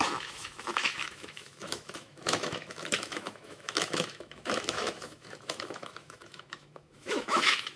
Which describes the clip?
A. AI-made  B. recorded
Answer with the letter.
A